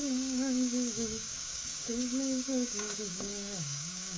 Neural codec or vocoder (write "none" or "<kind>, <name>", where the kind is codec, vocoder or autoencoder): codec, DAC